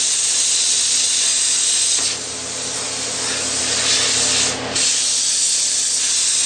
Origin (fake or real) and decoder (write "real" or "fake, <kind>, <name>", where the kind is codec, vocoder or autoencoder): real